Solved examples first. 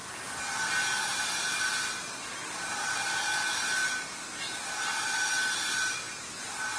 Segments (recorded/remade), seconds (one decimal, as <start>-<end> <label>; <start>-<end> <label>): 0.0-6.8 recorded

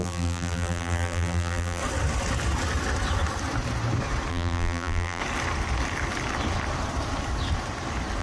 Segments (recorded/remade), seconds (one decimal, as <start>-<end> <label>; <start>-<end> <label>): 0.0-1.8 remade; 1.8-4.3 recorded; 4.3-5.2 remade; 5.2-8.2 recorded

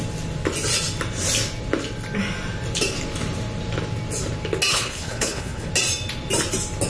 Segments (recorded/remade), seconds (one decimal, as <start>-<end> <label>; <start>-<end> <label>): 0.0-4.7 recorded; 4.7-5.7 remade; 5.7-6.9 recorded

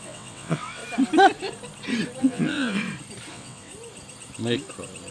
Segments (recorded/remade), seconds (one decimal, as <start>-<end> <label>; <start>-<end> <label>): 0.0-0.8 remade; 0.8-2.2 recorded; 2.2-2.8 remade; 2.8-3.3 recorded; 3.3-3.7 remade; 3.7-5.1 recorded

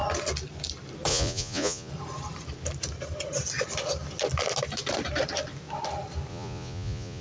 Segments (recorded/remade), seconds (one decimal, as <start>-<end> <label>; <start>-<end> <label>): 0.0-1.1 recorded; 1.1-1.9 remade; 1.9-6.3 recorded; 6.3-7.2 remade

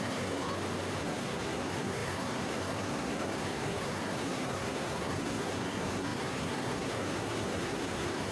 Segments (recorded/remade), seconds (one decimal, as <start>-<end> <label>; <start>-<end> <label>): 0.0-0.5 remade; 0.5-1.0 recorded; 1.0-8.3 remade

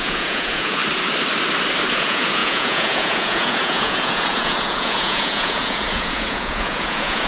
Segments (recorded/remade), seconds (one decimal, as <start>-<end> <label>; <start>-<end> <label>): 0.0-0.8 remade; 0.8-1.9 recorded; 1.9-7.3 remade

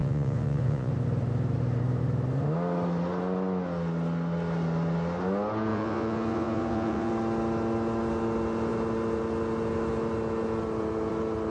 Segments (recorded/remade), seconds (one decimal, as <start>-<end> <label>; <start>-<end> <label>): 0.0-0.9 remade; 0.9-5.7 recorded; 5.7-7.1 remade; 7.1-11.5 recorded